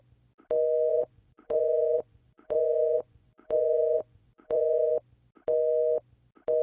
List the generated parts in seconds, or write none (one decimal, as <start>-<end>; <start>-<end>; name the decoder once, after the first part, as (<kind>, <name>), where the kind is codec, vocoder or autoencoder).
0.9-4.9 (vocoder, Vocos)